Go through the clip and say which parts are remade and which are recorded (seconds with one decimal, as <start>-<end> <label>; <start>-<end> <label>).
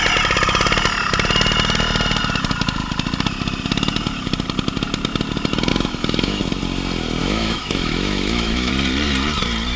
0.0-5.7 recorded; 5.7-6.4 remade; 6.4-7.2 recorded; 7.2-8.7 remade; 8.7-9.8 recorded